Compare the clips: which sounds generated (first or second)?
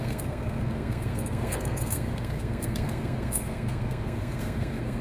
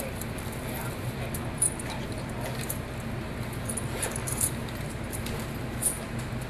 first